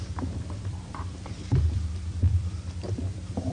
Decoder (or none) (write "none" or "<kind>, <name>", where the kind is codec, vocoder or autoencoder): vocoder, BigVGAN v2